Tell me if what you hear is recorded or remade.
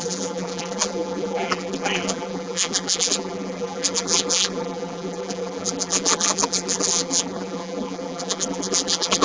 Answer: remade